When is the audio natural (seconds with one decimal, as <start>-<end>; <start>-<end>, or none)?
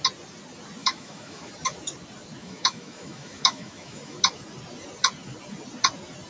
0.0-0.8; 1.5-2.4; 4.2-6.3